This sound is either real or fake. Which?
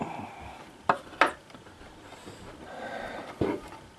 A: real